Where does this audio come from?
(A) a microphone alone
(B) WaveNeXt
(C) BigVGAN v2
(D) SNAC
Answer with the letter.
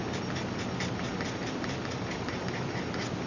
A